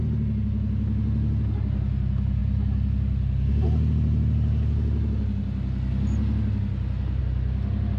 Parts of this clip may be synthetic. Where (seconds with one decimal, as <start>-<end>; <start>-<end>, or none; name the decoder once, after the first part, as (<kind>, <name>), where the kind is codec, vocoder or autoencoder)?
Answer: none